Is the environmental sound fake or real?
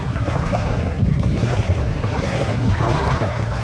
fake